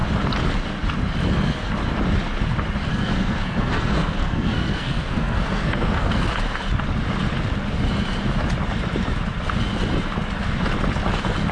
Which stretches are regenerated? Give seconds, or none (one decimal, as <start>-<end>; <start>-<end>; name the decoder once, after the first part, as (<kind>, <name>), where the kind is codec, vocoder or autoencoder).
2.9-6.3 (codec, SNAC)